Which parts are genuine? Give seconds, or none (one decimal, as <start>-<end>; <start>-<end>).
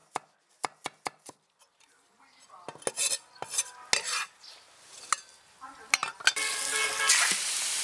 0.0-7.8